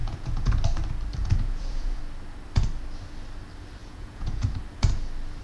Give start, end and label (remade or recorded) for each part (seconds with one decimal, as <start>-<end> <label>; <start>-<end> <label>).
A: 0.0-0.5 remade; 0.5-1.2 recorded; 1.2-2.0 remade; 2.0-3.8 recorded; 3.8-4.6 remade; 4.6-5.4 recorded

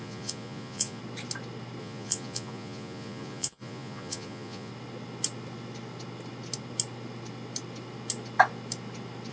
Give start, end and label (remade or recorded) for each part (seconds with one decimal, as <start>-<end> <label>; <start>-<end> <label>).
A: 0.0-1.0 remade; 1.0-1.8 recorded; 1.8-4.7 remade; 4.7-9.3 recorded

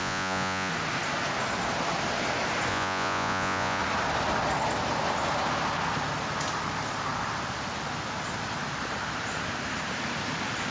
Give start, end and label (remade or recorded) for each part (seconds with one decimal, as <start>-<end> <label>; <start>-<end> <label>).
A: 0.0-0.7 remade; 0.7-2.7 recorded; 2.7-3.8 remade; 3.8-10.7 recorded

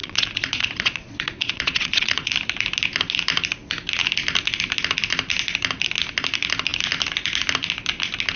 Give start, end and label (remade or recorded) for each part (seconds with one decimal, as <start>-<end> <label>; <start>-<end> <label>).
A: 0.0-2.3 remade; 2.3-8.4 recorded